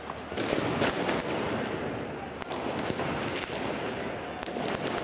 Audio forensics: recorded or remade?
recorded